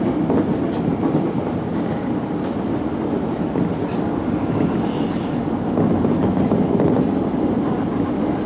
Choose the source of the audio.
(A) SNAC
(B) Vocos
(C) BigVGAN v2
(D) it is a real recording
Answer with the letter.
D